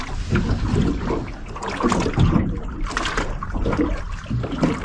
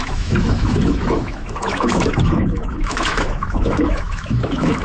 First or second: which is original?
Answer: first